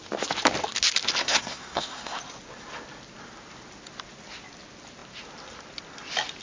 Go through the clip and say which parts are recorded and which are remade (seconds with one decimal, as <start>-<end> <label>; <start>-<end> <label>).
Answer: 0.0-1.2 recorded; 1.2-2.2 remade; 2.2-6.4 recorded